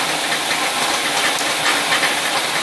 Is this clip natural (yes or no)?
yes